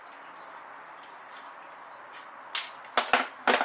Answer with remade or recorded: recorded